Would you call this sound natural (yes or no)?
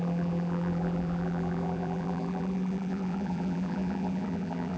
no